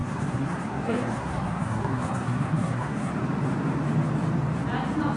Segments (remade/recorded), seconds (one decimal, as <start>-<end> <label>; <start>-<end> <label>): 0.0-3.1 remade; 3.1-5.2 recorded

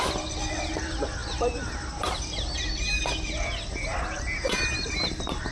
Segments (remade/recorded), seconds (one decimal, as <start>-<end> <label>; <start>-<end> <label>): 0.0-5.5 recorded

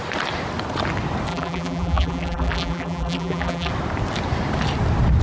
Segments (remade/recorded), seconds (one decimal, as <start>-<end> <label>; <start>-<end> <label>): 0.0-1.3 recorded; 1.3-3.7 remade; 3.7-5.2 recorded

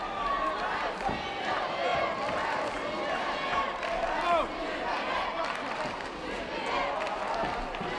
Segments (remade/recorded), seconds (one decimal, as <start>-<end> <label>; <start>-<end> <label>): 0.0-8.0 recorded